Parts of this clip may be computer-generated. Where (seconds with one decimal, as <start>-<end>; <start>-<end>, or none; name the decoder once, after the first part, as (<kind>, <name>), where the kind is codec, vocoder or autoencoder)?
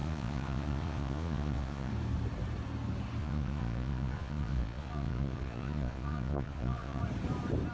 0.0-1.9 (vocoder, Vocos); 3.2-7.0